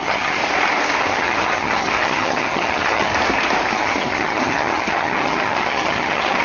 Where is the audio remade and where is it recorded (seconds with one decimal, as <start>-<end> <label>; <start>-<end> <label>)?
0.0-0.4 remade; 0.4-1.0 recorded; 1.0-3.1 remade; 3.1-3.7 recorded; 3.7-6.4 remade